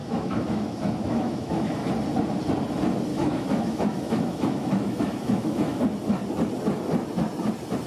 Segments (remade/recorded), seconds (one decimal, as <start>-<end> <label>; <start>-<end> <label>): 0.0-1.9 remade; 1.9-3.1 recorded; 3.1-5.8 remade; 5.8-7.9 recorded